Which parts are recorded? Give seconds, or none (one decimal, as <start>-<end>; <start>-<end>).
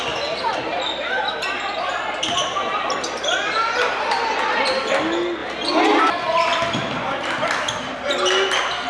0.0-8.9